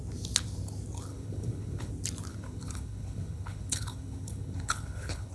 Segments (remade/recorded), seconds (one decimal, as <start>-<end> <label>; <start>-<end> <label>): 0.0-1.1 recorded; 1.1-1.9 remade; 1.9-2.3 recorded; 2.3-5.3 remade